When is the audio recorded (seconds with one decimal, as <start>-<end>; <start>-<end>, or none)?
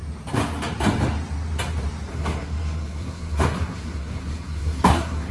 0.0-2.1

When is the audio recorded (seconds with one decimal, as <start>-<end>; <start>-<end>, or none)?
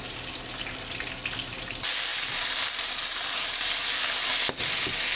0.0-5.2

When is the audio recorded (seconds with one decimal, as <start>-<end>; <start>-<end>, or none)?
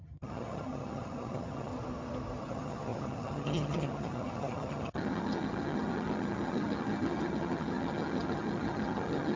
1.7-2.4